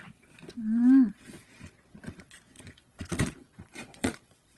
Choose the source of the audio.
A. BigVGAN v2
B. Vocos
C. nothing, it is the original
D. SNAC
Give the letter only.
B